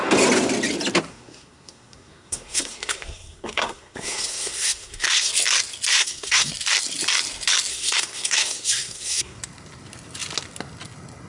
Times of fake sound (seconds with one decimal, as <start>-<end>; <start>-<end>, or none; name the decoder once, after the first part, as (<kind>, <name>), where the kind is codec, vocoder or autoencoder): 1.1-5.3 (codec, SNAC); 5.9-6.5; 7.7-9.4